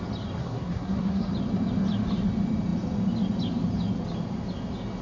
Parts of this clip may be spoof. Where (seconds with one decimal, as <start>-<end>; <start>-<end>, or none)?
0.4-1.3